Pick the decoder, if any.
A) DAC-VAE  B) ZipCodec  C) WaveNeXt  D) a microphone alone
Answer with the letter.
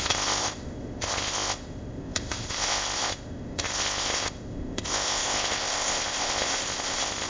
B